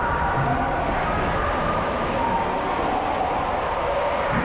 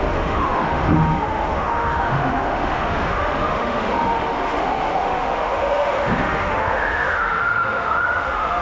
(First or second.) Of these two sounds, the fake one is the second